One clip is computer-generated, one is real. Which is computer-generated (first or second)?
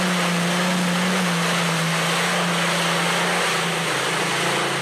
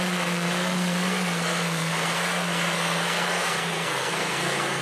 second